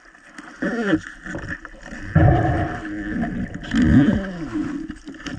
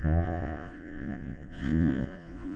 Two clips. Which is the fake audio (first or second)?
second